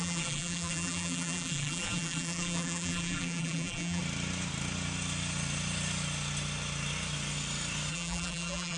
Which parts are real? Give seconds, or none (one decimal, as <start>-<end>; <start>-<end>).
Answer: 4.0-7.9